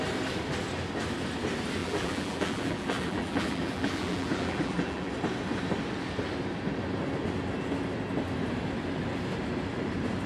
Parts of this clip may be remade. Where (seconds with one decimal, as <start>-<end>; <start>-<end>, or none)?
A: 1.8-5.1